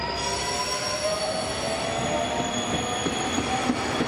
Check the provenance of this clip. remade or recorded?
recorded